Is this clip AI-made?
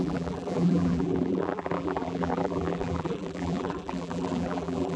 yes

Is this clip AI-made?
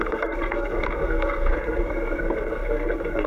yes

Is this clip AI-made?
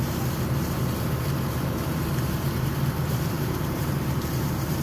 yes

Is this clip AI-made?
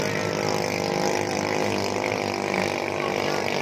no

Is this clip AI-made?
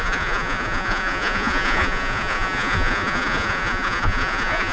yes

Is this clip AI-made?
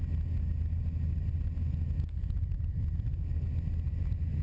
no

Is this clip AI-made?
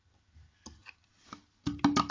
no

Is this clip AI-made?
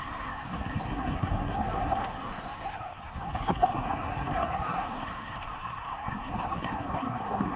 yes